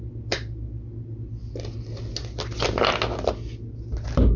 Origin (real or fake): real